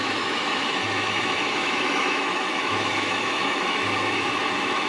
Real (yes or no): no